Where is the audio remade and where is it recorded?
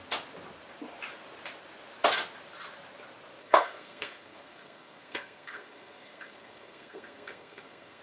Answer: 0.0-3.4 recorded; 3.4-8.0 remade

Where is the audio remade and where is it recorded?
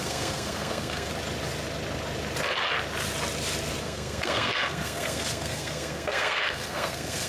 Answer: 0.0-1.1 remade; 1.1-3.8 recorded; 3.8-7.3 remade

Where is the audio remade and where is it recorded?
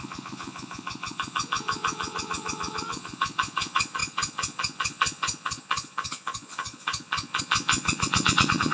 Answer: 0.0-8.7 remade